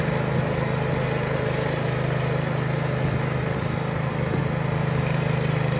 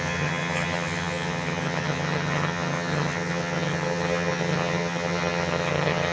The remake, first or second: second